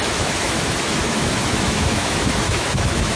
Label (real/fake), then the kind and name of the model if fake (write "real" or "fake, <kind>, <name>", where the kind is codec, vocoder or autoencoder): fake, autoencoder, DAC-VAE